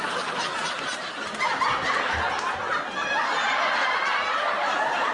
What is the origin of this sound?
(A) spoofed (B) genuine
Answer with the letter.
B